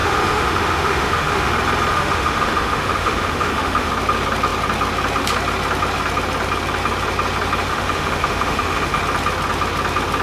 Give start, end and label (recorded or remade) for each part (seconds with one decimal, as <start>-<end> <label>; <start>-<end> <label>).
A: 0.0-1.5 remade; 1.5-1.9 recorded; 1.9-3.9 remade; 3.9-7.7 recorded; 7.7-9.0 remade; 9.0-10.2 recorded